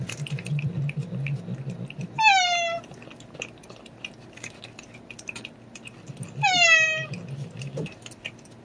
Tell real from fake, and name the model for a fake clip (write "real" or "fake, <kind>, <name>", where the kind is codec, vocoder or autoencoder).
real